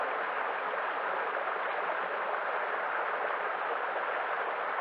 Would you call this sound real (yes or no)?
yes